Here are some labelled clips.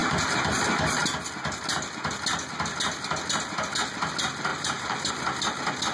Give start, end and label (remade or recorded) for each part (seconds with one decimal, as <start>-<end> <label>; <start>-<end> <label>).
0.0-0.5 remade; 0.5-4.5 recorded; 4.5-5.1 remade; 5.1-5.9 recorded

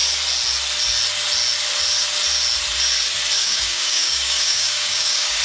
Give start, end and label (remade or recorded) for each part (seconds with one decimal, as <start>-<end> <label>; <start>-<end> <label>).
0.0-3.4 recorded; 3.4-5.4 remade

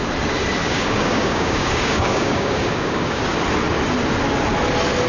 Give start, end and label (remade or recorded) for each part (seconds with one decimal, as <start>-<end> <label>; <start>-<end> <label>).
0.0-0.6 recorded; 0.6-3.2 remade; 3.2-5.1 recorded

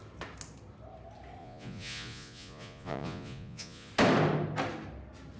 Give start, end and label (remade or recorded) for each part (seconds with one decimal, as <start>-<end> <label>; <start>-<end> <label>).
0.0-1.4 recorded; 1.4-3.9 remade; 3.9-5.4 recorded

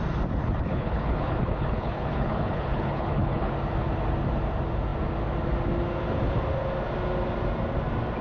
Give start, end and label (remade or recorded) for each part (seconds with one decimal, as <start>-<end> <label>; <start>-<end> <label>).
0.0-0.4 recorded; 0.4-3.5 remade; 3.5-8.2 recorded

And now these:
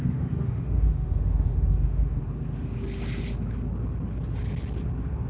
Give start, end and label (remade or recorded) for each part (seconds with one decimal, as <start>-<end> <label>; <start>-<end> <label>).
0.0-2.2 remade; 2.2-5.3 recorded